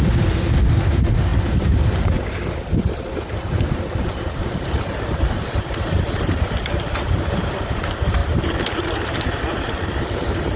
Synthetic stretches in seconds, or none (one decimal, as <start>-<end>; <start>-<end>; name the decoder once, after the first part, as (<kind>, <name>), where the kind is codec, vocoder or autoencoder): 0.0-10.6 (vocoder, BigVGAN v2)